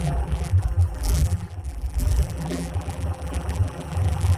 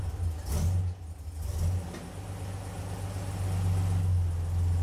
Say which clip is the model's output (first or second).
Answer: first